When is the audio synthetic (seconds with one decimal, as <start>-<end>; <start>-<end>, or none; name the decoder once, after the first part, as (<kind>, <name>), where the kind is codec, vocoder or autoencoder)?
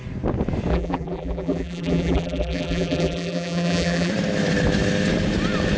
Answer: 0.7-4.1 (vocoder, BigVGAN v2)